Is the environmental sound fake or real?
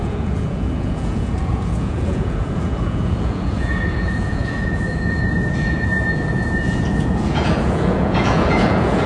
fake